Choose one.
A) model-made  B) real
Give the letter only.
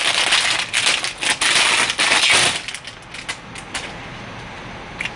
B